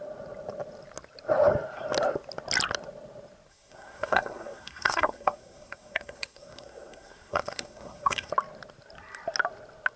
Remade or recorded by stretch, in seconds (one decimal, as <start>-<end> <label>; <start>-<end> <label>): 0.0-3.5 recorded; 3.5-8.3 remade; 8.3-10.0 recorded